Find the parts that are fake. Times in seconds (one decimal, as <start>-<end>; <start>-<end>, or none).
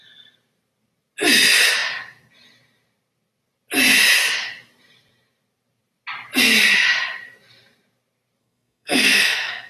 8.4-9.7